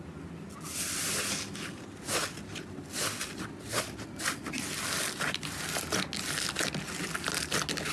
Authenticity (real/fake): real